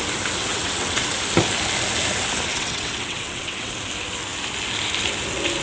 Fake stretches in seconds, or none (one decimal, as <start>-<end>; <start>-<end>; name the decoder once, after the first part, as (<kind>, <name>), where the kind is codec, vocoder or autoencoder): 0.4-1.1 (vocoder, WaveNeXt); 2.5-3.7